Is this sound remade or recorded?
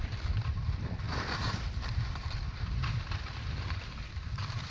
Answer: remade